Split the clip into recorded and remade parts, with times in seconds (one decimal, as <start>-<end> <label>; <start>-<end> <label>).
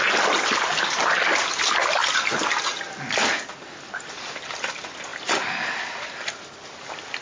0.0-7.2 recorded